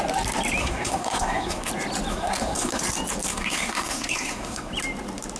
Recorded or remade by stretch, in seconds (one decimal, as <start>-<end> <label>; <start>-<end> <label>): 0.0-0.6 recorded; 0.6-1.7 remade; 1.7-2.1 recorded; 2.1-2.8 remade; 2.8-3.3 recorded; 3.3-4.7 remade; 4.7-5.4 recorded